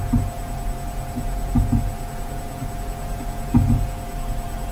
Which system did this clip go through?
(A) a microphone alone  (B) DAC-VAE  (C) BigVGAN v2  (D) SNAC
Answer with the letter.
A